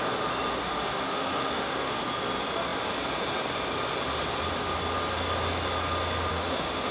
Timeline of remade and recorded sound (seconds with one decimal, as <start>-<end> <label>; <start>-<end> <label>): 0.0-0.6 recorded; 0.6-2.0 remade; 2.0-6.3 recorded; 6.3-6.9 remade